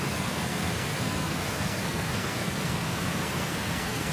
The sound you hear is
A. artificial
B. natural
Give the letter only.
A